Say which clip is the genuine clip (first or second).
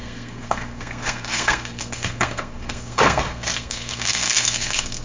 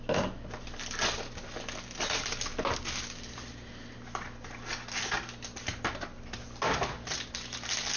second